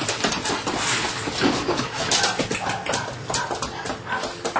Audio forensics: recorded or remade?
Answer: recorded